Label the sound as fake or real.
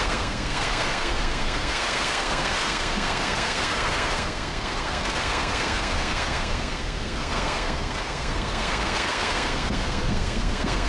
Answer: fake